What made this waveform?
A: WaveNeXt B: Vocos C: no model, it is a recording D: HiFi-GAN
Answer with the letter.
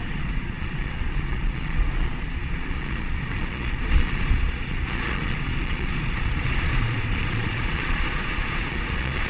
B